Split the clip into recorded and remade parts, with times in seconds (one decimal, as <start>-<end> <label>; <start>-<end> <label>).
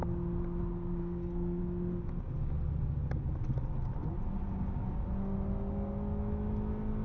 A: 0.0-1.0 recorded; 1.0-1.6 remade; 1.6-7.0 recorded